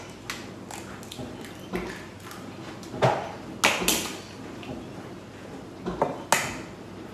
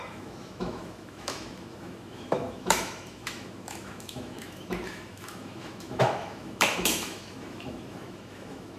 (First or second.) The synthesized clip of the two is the second